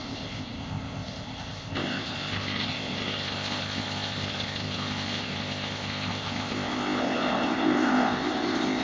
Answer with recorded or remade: remade